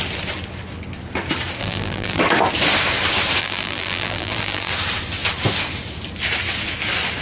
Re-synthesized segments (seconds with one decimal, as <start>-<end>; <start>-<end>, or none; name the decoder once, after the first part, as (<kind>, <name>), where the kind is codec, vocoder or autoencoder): 1.6-2.2 (vocoder, BigVGAN v2); 3.4-4.7